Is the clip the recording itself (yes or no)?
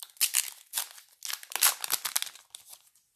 yes